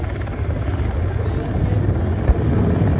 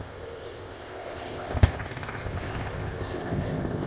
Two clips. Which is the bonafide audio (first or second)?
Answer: first